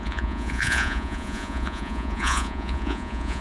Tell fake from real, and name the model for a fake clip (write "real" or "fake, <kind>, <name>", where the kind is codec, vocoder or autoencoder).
fake, vocoder, Vocos